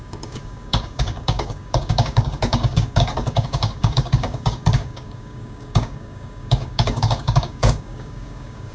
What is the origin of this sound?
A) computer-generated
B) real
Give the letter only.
A